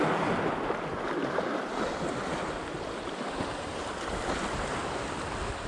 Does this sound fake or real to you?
real